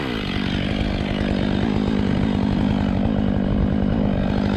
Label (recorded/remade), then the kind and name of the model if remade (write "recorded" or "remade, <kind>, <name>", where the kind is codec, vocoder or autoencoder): recorded